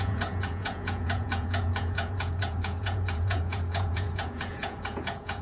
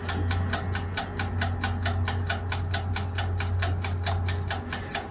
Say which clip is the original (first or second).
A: second